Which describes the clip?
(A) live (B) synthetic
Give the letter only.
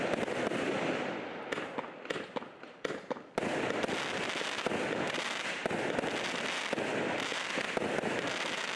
A